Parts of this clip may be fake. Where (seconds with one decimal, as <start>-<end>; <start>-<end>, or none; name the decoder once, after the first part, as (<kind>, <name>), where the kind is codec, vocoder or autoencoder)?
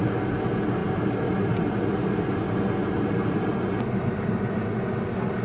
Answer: 0.8-2.2 (vocoder, BigVGAN v2); 2.8-4.6